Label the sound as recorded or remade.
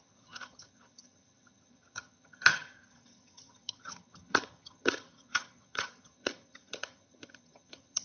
remade